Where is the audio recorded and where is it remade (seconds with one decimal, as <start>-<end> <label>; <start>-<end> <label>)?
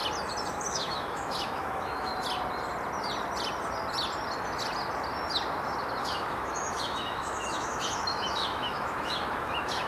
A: 0.0-0.7 recorded; 0.7-2.1 remade; 2.1-6.0 recorded; 6.0-9.9 remade